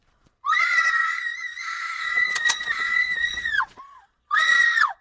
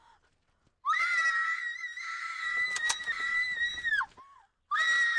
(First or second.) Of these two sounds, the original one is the second